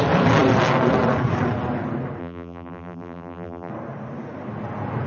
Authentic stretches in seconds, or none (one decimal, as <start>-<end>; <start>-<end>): 0.0-2.2; 3.7-5.1